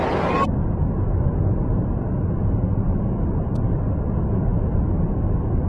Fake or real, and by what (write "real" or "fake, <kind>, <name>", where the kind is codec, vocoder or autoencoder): real